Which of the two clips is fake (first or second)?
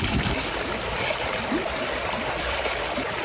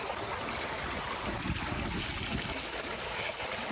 first